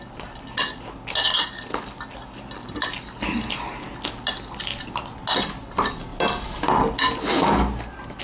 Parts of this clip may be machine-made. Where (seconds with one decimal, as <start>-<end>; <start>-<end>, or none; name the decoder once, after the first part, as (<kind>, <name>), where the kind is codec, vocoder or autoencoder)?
none